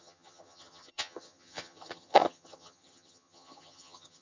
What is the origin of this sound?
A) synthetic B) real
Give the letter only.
A